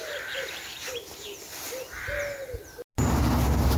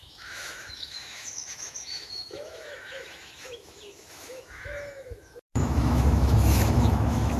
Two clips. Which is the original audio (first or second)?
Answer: first